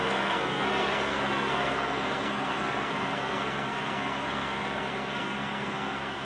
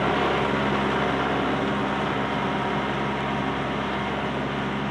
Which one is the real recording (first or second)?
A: second